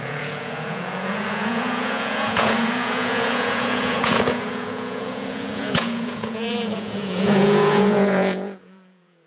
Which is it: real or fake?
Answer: fake